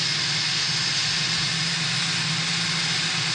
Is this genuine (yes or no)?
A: yes